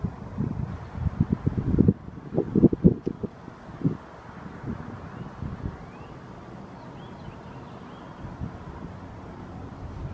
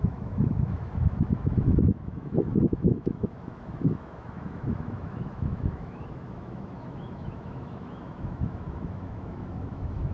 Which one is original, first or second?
first